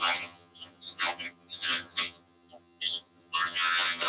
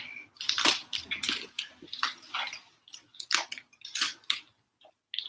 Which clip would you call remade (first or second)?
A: first